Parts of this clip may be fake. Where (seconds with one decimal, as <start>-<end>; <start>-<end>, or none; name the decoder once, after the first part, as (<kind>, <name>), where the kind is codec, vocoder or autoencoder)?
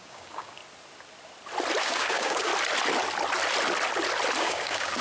0.0-0.6 (codec, DAC); 1.8-2.5; 4.4-5.0